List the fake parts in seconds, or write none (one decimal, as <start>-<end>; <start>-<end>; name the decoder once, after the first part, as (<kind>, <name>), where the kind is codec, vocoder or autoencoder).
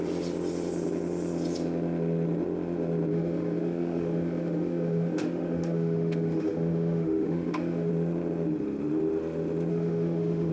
3.1-7.9 (autoencoder, DAC-VAE); 9.7-10.5